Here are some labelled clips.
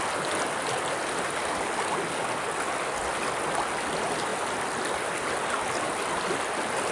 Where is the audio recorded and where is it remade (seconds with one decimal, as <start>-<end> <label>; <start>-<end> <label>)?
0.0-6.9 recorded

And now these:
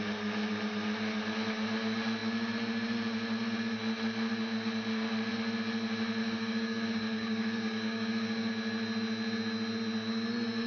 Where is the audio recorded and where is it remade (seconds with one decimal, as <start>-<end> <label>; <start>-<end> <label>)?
0.0-6.2 recorded; 6.2-8.5 remade; 8.5-10.7 recorded

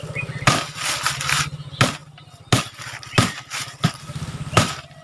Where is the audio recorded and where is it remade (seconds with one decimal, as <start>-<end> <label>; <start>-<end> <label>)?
0.0-5.0 recorded

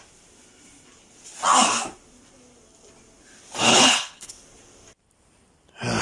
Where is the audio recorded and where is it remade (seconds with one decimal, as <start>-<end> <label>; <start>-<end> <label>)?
0.0-3.7 recorded; 3.7-4.3 remade; 4.3-6.0 recorded